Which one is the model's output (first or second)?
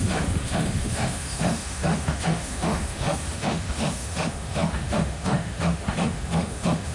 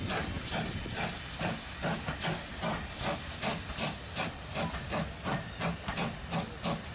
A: first